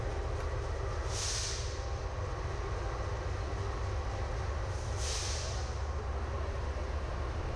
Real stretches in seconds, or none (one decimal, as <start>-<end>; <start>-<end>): 0.0-7.6